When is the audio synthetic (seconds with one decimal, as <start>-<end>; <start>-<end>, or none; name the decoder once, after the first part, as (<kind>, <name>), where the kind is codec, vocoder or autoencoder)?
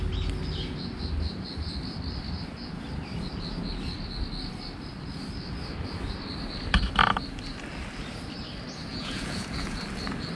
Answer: 8.9-9.8 (vocoder, Vocos)